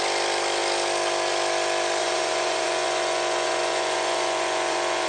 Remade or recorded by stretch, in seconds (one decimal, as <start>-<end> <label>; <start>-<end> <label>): 0.0-2.0 recorded; 2.0-5.1 remade